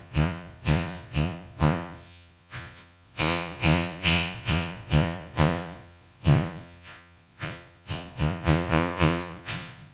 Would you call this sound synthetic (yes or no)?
yes